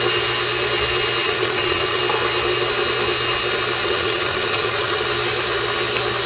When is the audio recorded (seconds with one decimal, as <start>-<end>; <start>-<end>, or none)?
0.0-1.2; 2.0-3.8; 5.0-6.3